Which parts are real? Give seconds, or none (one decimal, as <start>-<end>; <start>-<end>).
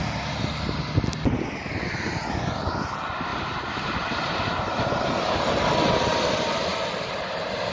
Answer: 0.0-3.3; 5.5-6.7